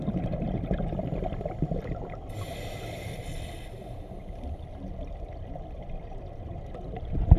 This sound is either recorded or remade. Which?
recorded